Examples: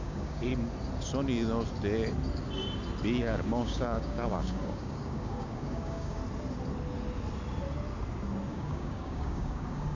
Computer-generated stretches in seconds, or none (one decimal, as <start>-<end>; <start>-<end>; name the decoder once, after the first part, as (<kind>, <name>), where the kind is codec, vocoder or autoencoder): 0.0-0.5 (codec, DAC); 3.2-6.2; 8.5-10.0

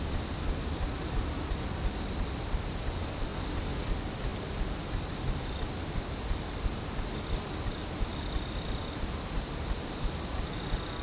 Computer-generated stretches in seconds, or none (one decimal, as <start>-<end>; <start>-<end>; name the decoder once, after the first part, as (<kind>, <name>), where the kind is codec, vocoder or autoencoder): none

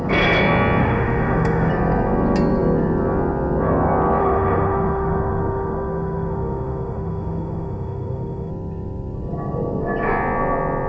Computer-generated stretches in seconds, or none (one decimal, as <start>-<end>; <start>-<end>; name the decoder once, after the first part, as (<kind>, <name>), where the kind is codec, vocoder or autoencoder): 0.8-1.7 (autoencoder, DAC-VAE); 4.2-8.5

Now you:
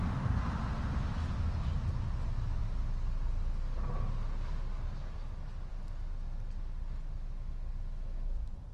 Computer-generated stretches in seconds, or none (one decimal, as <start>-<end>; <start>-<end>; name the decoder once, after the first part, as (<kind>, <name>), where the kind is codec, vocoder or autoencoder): none